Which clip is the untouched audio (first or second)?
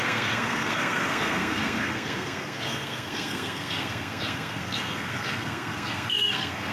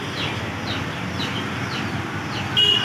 second